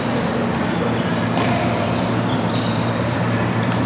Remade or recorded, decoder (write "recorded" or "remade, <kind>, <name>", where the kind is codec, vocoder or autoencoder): remade, vocoder, BigVGAN v2